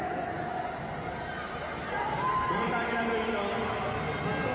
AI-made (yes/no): no